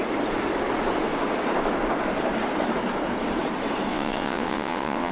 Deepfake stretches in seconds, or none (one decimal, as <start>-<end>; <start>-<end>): 3.9-5.1